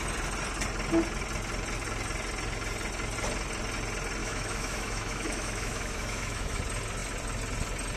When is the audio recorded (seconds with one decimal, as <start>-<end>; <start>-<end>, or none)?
0.0-4.2; 6.6-8.0